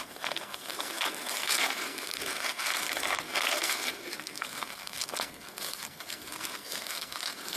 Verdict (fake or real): fake